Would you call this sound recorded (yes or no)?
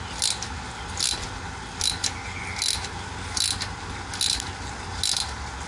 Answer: yes